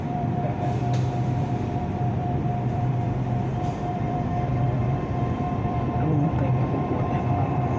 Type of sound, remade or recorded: remade